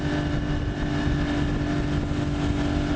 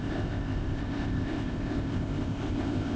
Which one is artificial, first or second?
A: second